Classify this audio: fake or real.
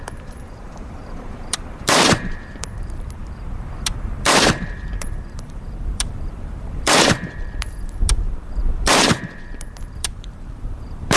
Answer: fake